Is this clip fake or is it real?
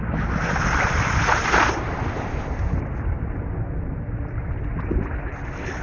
real